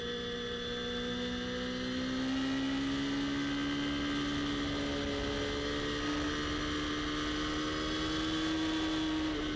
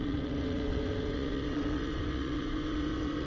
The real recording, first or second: first